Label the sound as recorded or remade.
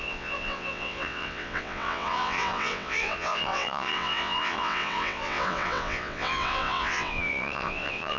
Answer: remade